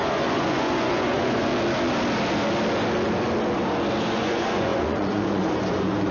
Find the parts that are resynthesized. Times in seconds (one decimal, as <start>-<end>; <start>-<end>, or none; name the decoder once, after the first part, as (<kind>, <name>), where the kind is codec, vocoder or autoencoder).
0.0-1.5 (vocoder, Vocos); 4.1-6.1